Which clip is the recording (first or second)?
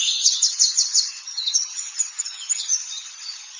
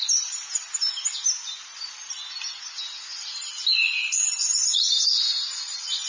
second